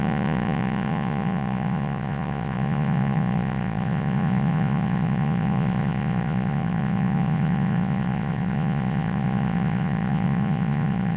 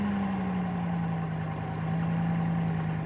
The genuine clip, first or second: second